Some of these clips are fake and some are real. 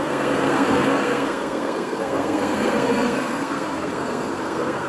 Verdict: fake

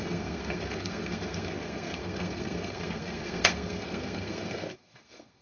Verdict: fake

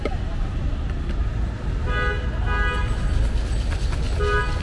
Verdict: real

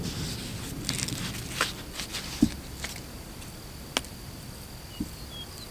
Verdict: real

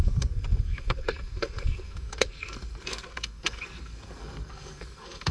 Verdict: fake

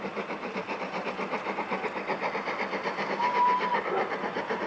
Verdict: real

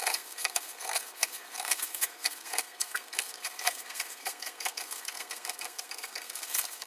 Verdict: fake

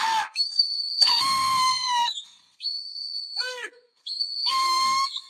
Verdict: fake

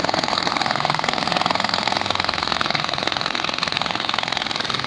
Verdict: fake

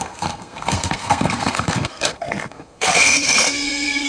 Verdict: fake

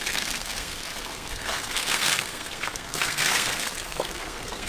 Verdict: fake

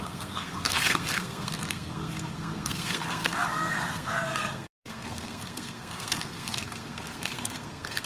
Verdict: fake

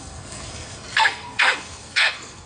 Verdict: fake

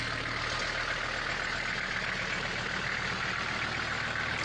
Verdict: real